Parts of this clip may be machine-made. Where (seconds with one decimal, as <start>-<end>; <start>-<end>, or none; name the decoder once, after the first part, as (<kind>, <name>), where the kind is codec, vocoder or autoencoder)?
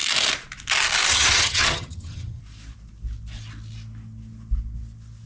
1.1-2.4 (vocoder, HiFi-GAN)